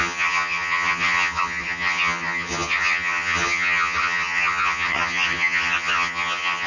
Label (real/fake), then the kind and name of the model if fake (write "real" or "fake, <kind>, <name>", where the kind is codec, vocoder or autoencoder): fake, vocoder, HiFi-GAN